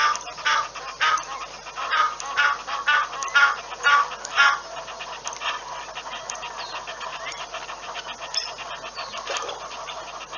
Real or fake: real